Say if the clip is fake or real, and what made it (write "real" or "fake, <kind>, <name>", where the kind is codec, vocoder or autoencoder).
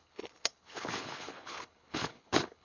fake, codec, HILCodec